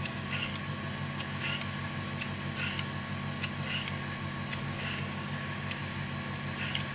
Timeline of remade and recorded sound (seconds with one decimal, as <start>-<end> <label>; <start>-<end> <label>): 0.0-0.5 remade; 0.5-4.6 recorded; 4.6-5.8 remade; 5.8-6.9 recorded